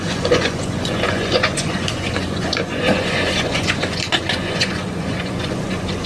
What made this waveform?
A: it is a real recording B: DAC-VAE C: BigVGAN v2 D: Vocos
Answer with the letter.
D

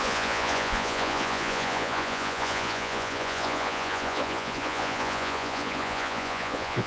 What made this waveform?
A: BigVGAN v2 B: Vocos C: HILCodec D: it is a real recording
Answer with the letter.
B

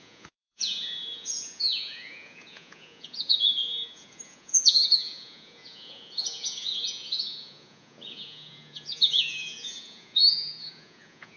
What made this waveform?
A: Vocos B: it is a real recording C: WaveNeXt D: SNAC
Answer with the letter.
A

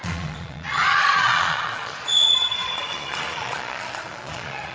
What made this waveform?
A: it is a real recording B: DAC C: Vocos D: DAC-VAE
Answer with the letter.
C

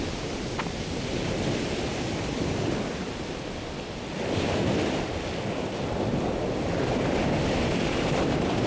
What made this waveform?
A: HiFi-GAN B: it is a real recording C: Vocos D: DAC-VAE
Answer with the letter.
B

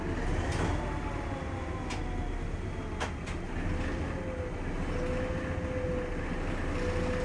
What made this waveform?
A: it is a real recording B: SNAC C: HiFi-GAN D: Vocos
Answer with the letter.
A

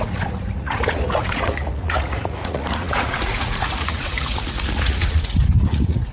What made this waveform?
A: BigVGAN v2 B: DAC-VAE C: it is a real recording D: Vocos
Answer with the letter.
D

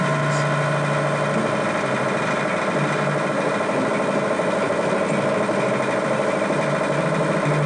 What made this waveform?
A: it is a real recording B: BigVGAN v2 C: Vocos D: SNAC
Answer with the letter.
A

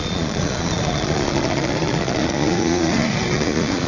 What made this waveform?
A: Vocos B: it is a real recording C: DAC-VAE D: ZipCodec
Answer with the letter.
A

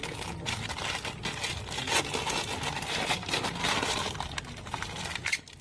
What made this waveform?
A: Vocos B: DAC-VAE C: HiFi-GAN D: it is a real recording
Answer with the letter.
D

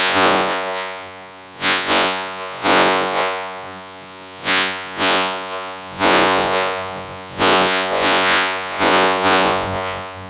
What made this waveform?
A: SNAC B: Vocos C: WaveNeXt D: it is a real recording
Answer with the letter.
B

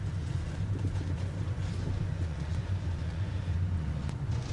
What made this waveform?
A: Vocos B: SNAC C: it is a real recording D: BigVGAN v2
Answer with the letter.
A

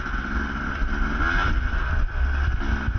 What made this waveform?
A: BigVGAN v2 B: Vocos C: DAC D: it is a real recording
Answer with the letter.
D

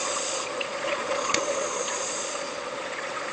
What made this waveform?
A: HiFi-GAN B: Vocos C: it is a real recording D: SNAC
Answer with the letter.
B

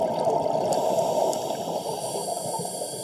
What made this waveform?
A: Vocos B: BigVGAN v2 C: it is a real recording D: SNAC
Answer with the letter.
C